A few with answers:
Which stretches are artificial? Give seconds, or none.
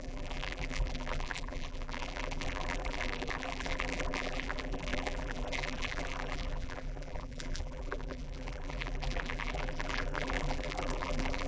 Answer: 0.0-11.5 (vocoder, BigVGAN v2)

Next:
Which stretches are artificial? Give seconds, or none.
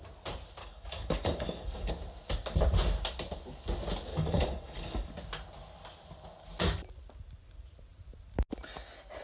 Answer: 0.6-1.9 (codec, DAC); 4.1-5.1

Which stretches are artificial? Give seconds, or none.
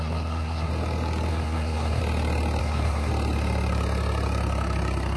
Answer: 0.0-0.7 (codec, SNAC); 1.3-2.0; 2.6-3.1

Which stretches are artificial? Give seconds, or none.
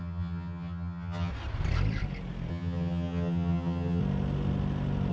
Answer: 0.0-1.3 (vocoder, HiFi-GAN); 2.5-4.0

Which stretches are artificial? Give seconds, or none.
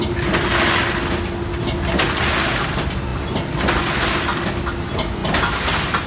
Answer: none